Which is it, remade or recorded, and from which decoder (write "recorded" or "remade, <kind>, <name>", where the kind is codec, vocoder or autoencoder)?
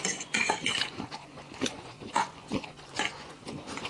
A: remade, vocoder, Vocos